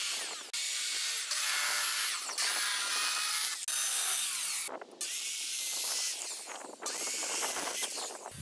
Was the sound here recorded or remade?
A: recorded